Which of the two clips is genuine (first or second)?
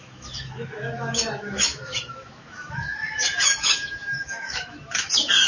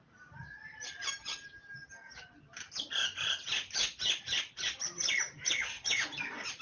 second